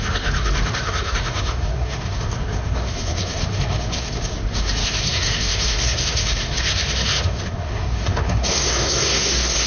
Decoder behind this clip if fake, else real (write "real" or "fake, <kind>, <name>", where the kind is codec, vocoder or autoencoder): fake, codec, SNAC